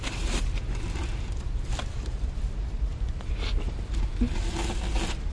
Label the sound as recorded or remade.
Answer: recorded